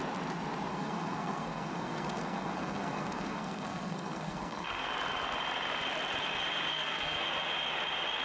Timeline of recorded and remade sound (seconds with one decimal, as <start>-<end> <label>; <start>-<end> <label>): 0.0-0.7 recorded; 0.7-4.9 remade; 4.9-6.7 recorded; 6.7-7.2 remade; 7.2-8.2 recorded